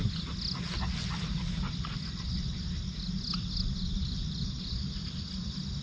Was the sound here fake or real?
real